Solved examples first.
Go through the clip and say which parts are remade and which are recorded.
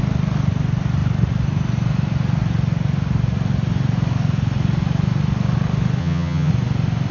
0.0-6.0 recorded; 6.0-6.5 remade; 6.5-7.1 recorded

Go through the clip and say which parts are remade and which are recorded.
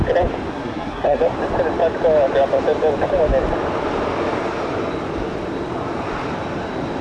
0.0-0.5 recorded; 0.5-1.2 remade; 1.2-7.0 recorded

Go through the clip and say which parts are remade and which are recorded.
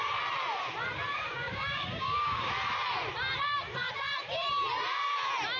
0.0-1.1 recorded; 1.1-2.5 remade; 2.5-5.6 recorded